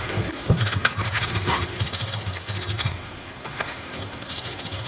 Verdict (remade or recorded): remade